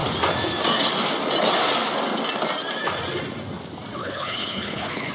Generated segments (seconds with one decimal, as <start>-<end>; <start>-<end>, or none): 4.0-5.1

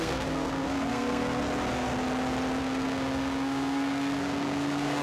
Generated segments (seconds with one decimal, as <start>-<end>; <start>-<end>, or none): 0.0-1.4; 2.6-5.0

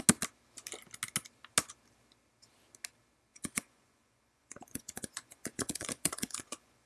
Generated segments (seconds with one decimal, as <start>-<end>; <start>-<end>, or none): 3.3-6.9

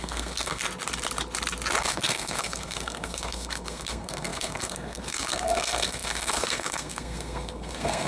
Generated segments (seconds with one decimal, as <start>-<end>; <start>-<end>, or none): 0.0-0.6; 1.8-8.1

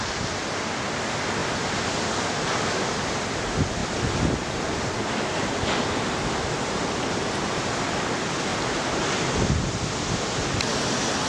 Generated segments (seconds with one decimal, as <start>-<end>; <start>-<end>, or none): 1.4-2.7; 3.8-7.7

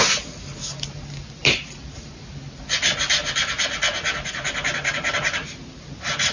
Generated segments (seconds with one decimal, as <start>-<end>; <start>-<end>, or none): none

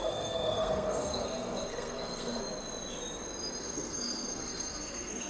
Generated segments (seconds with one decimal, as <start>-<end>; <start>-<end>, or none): 0.0-2.4; 3.6-5.3

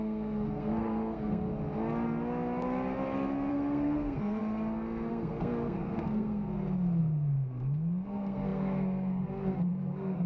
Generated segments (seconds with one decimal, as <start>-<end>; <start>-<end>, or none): 0.0-1.4; 3.5-4.4; 5.1-6.5; 7.0-10.3